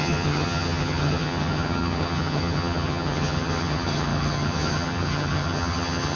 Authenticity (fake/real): fake